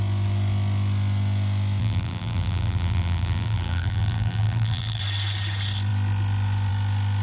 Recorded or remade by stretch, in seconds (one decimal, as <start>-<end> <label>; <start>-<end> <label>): 0.0-1.8 recorded; 1.8-5.0 remade; 5.0-7.2 recorded